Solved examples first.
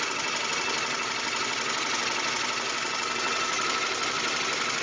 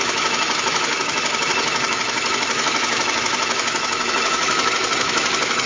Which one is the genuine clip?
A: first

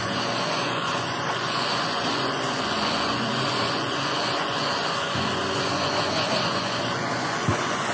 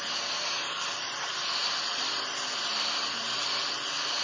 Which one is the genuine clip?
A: second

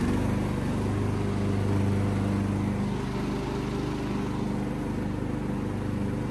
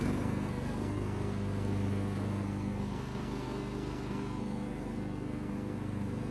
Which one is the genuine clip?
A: first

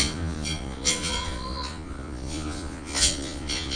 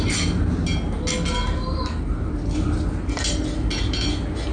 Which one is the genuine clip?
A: second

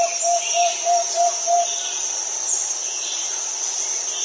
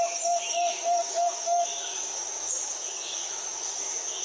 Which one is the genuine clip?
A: first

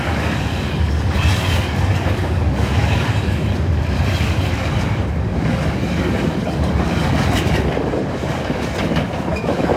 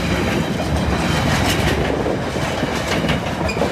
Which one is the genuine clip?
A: second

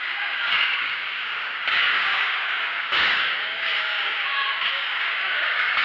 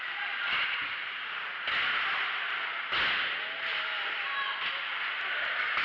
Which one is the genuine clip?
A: second